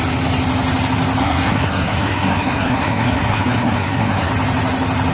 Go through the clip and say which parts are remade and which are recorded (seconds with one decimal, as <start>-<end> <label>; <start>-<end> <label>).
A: 0.0-1.2 recorded; 1.2-4.3 remade; 4.3-5.1 recorded